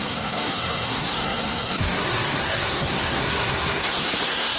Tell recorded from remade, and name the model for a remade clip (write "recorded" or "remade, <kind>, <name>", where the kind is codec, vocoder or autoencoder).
remade, codec, SNAC